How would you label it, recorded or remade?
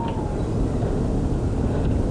recorded